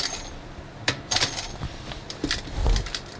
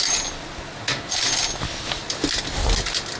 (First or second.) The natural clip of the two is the second